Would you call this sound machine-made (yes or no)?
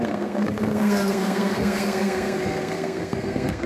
yes